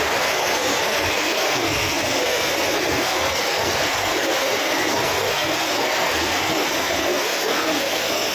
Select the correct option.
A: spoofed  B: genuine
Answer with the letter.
A